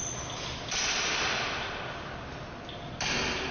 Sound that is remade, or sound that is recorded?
recorded